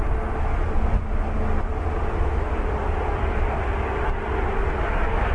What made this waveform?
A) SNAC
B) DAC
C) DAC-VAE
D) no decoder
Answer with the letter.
D